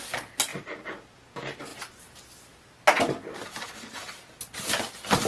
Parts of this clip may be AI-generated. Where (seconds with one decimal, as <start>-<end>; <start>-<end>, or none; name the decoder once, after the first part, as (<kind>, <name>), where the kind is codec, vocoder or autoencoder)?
0.5-1.0 (vocoder, BigVGAN v2)